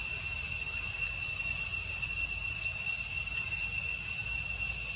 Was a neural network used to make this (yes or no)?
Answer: no